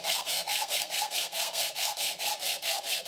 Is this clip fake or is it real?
fake